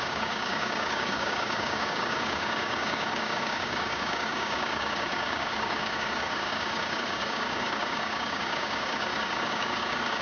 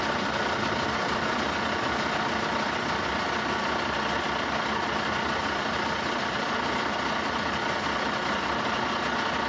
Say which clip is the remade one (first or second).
first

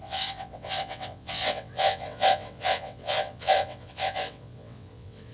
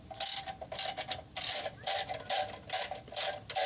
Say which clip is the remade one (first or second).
first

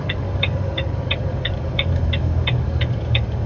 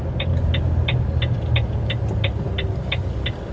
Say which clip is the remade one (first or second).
first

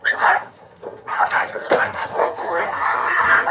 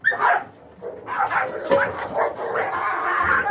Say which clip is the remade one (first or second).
first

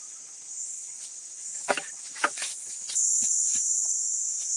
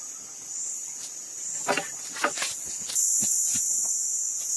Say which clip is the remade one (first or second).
first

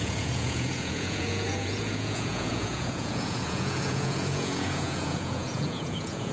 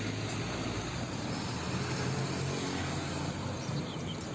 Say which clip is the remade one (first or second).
first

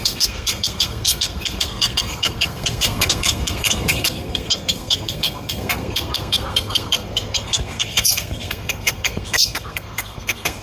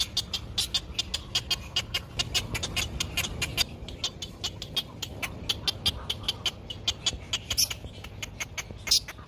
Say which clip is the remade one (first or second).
first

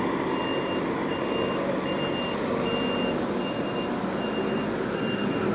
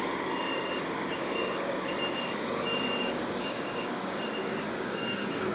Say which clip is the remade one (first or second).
second